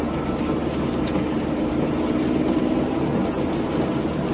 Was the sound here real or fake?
real